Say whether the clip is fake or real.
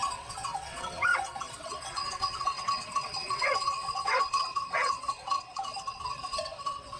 fake